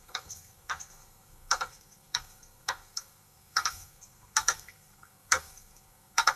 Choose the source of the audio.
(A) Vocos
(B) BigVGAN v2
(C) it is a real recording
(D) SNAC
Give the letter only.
D